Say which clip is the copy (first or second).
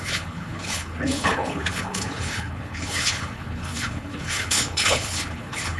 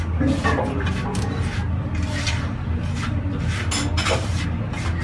first